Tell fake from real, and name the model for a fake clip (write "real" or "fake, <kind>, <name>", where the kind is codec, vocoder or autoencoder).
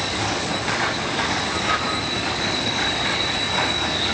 fake, codec, DAC